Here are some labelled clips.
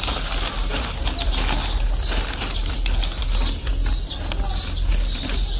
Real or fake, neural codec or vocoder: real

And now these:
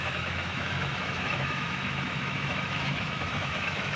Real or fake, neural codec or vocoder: fake, autoencoder, DAC-VAE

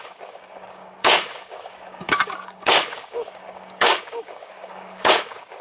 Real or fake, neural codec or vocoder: fake, codec, DAC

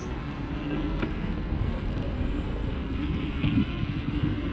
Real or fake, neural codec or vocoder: fake, codec, SNAC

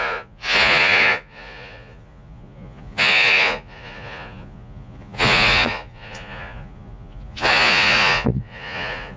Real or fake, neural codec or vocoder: fake, vocoder, Vocos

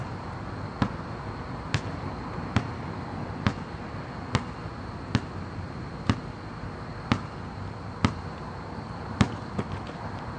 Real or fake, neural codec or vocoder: real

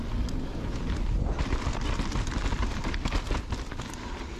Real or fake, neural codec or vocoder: real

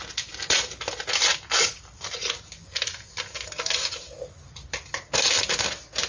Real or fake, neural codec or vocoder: real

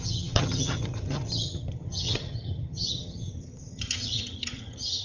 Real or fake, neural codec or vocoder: fake, vocoder, HiFi-GAN